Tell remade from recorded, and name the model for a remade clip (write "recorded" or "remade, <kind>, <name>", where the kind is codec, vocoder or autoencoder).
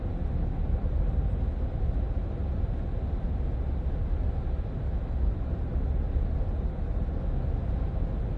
recorded